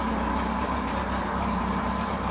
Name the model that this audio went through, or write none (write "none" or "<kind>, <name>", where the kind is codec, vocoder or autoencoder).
none